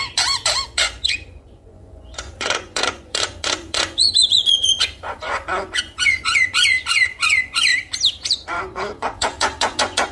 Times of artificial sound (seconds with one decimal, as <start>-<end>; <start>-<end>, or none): 0.0-7.7; 8.3-10.1